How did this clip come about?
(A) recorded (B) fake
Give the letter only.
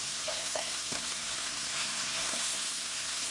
B